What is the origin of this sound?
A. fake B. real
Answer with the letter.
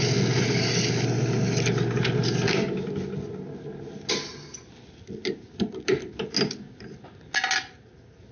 B